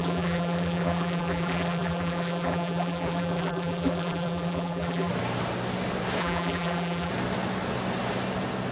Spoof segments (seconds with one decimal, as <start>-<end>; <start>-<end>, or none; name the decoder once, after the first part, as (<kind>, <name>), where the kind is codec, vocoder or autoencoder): 0.0-5.1 (vocoder, BigVGAN v2); 6.2-7.1